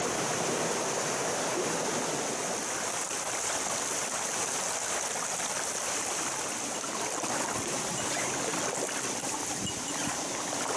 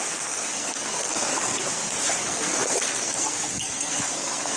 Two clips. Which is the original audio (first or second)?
first